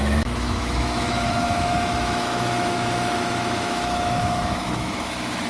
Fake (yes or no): yes